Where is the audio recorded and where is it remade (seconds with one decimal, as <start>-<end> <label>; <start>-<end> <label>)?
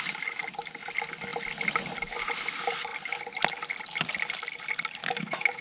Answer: 0.0-5.0 recorded; 5.0-5.6 remade